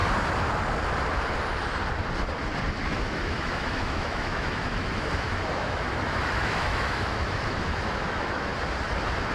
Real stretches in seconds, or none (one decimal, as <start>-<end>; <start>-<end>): 0.0-2.7; 8.5-9.3